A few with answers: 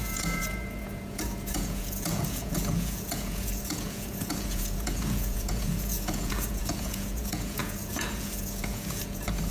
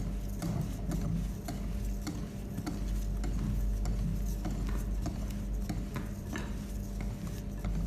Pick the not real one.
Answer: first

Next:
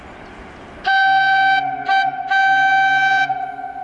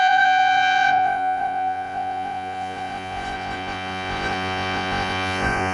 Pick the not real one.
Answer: second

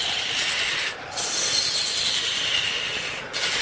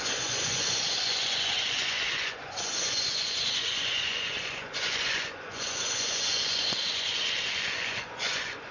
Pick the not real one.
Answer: second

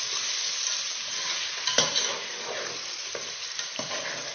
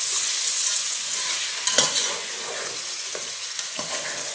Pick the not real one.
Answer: second